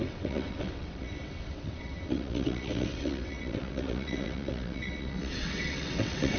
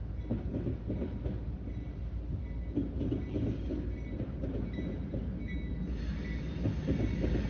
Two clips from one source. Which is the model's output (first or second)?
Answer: first